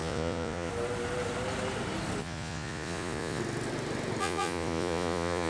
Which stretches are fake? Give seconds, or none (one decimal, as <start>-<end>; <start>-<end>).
0.0-0.7; 2.2-3.4; 4.2-5.5

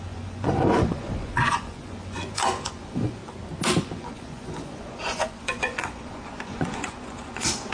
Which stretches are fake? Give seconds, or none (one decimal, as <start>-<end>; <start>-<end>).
0.0-3.2; 3.8-7.7

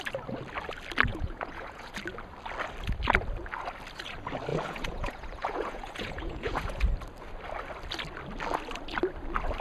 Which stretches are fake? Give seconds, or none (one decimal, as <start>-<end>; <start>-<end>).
1.1-1.9; 4.5-6.8